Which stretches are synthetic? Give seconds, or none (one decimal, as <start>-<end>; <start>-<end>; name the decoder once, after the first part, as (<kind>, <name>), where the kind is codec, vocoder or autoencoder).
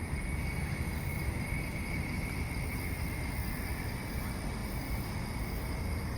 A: none